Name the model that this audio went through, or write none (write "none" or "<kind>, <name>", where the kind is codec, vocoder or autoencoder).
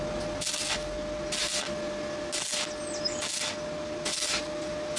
none